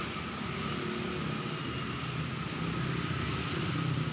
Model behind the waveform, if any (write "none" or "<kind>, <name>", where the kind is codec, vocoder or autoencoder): none